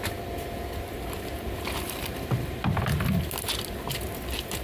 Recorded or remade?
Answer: recorded